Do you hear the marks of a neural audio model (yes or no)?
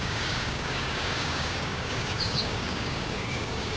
yes